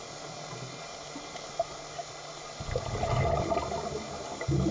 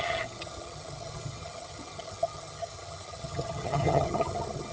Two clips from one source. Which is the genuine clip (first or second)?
first